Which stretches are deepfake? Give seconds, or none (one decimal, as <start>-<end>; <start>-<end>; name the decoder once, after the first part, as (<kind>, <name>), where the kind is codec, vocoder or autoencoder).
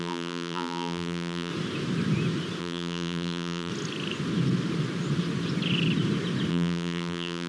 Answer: 0.0-1.5 (vocoder, BigVGAN v2); 2.6-3.7; 6.5-7.5